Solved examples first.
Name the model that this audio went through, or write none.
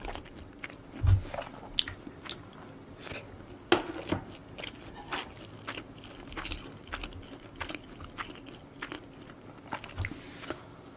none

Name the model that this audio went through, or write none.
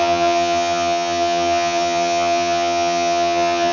vocoder, HiFi-GAN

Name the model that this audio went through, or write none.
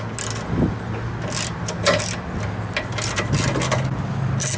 none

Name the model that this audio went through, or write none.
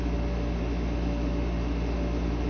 none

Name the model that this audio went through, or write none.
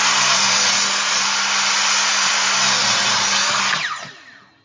none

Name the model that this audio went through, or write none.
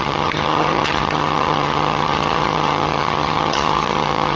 vocoder, HiFi-GAN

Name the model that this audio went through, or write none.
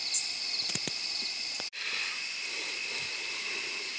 none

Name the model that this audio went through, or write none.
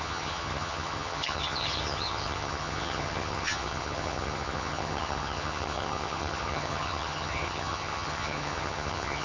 vocoder, HiFi-GAN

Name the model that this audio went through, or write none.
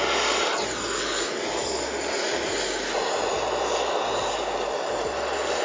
none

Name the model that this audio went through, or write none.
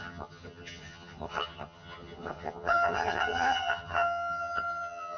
vocoder, HiFi-GAN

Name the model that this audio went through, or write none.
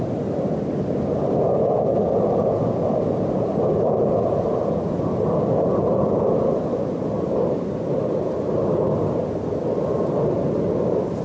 none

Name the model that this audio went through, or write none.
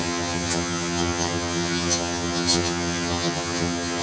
vocoder, HiFi-GAN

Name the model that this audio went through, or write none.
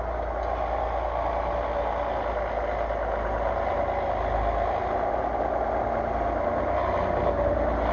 none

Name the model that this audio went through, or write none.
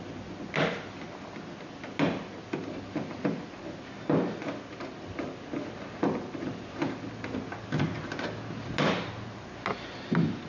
none